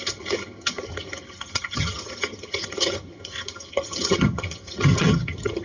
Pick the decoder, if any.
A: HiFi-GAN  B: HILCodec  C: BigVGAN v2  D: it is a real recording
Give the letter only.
A